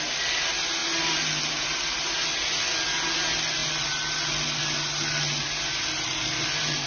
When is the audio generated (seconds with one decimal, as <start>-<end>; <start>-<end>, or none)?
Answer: none